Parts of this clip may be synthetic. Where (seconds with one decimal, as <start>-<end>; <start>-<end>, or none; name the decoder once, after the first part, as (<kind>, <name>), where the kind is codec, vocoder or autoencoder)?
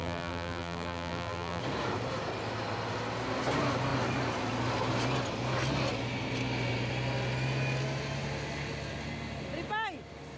0.0-1.6 (vocoder, BigVGAN v2)